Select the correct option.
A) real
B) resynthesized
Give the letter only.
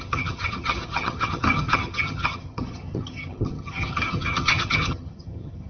B